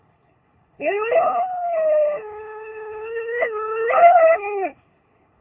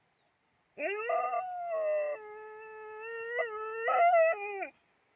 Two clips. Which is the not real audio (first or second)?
first